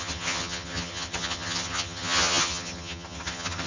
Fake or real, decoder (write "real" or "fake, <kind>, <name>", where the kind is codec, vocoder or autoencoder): fake, vocoder, HiFi-GAN